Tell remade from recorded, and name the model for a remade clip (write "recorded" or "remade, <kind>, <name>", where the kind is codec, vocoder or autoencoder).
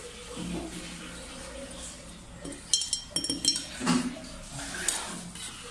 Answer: recorded